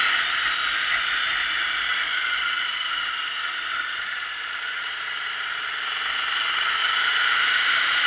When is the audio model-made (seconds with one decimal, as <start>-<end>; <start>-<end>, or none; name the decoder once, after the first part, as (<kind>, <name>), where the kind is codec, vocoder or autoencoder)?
6.8-8.1 (vocoder, BigVGAN v2)